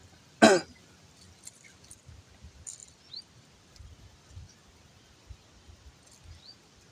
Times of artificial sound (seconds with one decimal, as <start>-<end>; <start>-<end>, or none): none

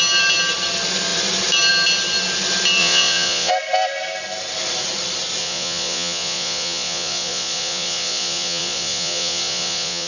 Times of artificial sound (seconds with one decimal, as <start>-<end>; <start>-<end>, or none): 2.8-3.5; 5.4-10.1